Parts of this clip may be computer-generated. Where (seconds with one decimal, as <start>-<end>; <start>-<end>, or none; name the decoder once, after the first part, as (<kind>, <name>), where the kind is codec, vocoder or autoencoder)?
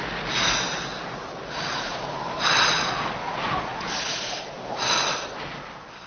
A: 3.2-3.9 (vocoder, Vocos)